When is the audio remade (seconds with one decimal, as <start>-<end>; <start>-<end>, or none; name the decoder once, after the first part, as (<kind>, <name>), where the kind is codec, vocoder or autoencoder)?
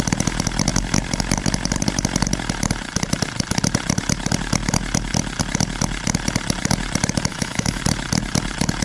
7.3-7.8 (autoencoder, DAC-VAE)